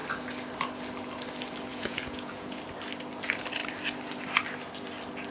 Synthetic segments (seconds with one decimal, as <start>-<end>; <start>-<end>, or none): 1.7-2.6